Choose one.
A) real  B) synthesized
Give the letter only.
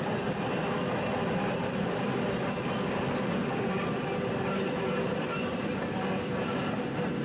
A